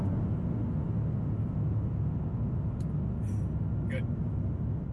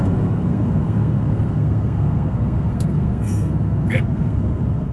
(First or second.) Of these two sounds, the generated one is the second